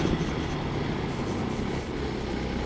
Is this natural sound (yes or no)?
yes